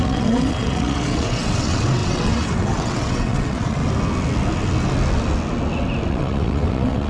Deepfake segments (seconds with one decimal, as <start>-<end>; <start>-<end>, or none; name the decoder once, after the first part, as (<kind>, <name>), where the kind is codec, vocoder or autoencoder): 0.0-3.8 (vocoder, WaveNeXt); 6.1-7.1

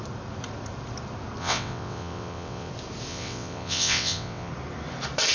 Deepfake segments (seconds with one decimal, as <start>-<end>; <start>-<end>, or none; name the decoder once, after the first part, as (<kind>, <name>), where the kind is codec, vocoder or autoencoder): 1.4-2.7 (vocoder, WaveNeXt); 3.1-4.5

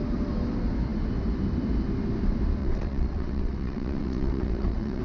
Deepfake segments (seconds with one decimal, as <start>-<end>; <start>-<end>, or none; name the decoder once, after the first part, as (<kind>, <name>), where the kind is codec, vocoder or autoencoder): 2.6-5.0 (vocoder, WaveNeXt)